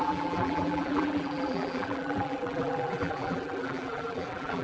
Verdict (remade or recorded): remade